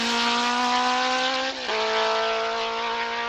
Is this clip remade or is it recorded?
recorded